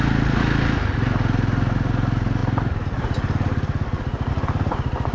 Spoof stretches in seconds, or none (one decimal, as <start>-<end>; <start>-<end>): none